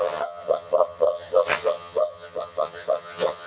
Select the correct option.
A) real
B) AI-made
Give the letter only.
B